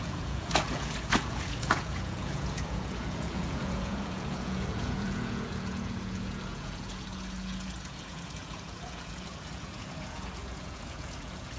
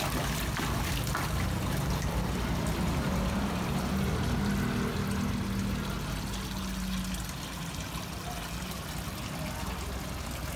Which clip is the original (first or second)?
second